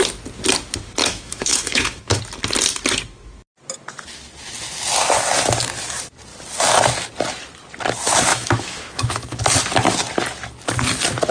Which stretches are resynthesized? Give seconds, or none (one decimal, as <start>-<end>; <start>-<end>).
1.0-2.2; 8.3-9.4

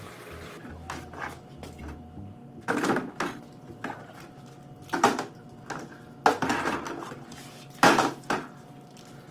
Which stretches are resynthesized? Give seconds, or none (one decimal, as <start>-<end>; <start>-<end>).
none

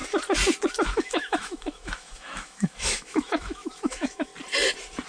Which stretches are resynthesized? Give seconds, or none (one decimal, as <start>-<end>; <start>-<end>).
0.7-4.3

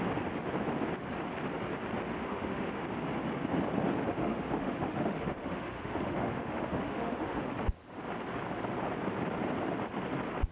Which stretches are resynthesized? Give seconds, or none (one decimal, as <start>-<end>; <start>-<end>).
2.2-2.8; 4.2-7.4

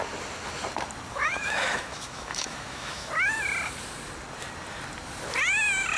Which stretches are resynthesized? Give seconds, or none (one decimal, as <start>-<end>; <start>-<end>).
1.1-3.1